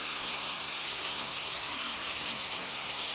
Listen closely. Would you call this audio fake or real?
fake